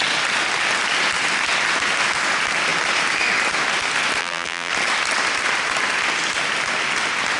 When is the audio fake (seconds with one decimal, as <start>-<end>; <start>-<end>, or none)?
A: 4.2-4.7